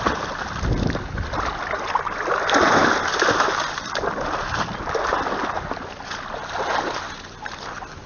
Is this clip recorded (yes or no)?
yes